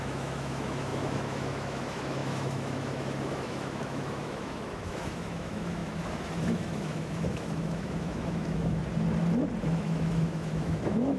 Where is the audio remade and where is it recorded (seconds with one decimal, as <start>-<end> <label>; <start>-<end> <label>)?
0.0-8.8 remade; 8.8-9.6 recorded; 9.6-11.2 remade